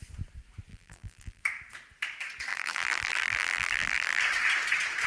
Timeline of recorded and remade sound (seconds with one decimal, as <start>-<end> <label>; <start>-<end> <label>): 0.0-0.7 recorded; 0.7-1.4 remade; 1.4-2.5 recorded; 2.5-4.2 remade; 4.2-5.1 recorded